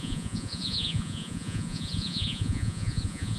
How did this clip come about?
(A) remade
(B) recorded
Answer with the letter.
A